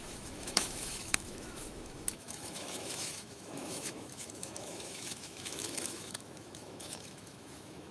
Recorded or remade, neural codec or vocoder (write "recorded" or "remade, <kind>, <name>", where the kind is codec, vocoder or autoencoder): remade, autoencoder, DAC-VAE